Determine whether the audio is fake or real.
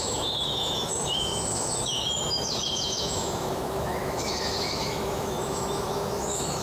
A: fake